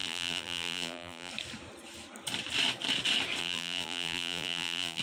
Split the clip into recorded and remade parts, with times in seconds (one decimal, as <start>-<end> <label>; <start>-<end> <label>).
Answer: 0.0-1.3 remade; 1.3-3.4 recorded; 3.4-5.0 remade